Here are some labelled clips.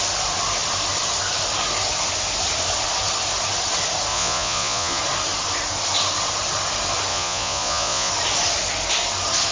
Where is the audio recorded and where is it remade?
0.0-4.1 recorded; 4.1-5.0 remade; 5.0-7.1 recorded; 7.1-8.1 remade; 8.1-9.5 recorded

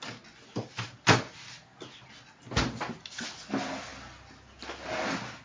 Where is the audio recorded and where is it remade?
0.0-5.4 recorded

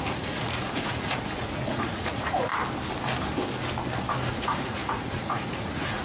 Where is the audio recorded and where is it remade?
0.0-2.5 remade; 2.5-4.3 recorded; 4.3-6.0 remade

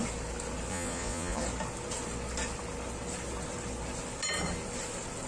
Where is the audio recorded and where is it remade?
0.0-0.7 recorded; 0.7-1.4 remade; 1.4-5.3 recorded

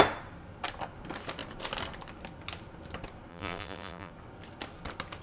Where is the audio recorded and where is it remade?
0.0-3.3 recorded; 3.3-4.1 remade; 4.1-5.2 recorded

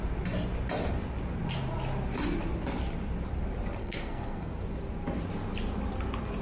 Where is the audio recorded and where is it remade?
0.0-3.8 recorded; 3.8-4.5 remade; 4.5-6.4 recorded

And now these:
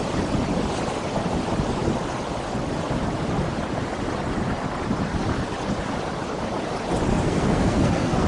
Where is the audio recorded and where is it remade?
0.0-7.1 recorded; 7.1-8.3 remade